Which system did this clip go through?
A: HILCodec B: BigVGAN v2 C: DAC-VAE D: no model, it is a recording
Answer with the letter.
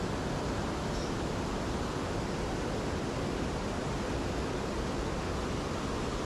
D